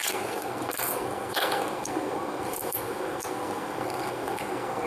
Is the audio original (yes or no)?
no